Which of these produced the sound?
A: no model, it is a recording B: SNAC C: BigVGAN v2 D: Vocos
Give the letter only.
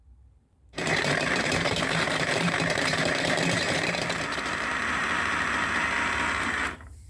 C